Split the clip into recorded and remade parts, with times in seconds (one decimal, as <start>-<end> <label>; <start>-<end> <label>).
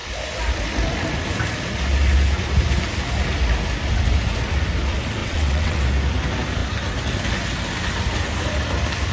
0.0-5.2 recorded; 5.2-5.8 remade; 5.8-9.1 recorded